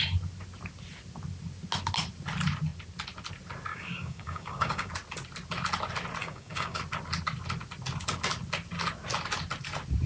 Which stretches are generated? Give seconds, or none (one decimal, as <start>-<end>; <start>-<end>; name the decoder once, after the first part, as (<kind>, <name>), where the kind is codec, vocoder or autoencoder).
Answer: 3.7-4.9 (codec, DAC); 6.2-6.8